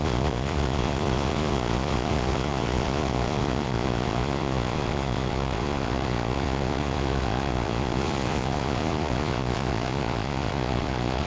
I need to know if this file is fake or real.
fake